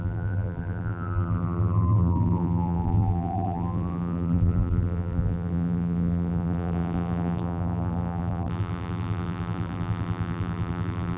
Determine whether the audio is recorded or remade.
remade